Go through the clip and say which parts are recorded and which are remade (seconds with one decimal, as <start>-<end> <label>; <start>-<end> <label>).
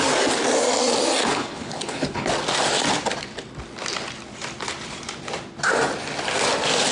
0.0-1.2 recorded; 1.2-2.3 remade; 2.3-6.9 recorded